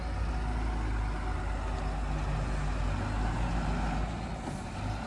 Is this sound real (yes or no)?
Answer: yes